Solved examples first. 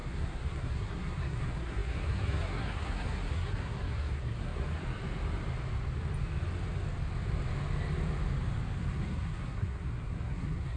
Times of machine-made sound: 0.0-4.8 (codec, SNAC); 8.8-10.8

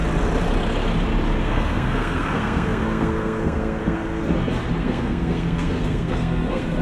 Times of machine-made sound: 1.4-4.2 (codec, SNAC); 4.8-6.8

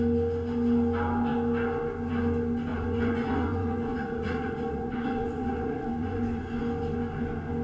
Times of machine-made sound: 2.7-6.6 (vocoder, Vocos)

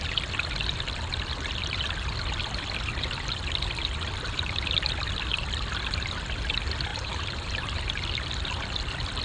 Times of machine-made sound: 6.9-7.8 (vocoder, BigVGAN v2)